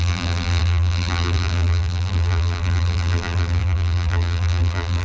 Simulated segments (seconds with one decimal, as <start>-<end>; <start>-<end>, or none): 0.0-5.0

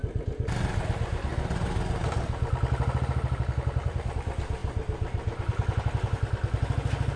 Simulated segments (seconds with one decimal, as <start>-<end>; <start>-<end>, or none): none

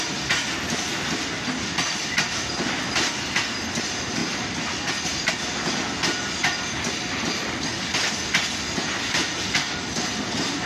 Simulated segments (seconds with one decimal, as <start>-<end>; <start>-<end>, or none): none

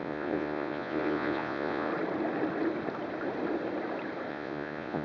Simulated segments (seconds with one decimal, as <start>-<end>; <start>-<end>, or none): 0.0-1.9; 4.3-5.0